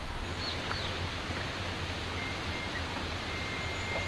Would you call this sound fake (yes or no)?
no